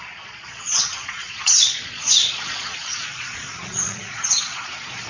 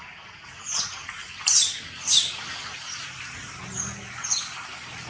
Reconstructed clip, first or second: first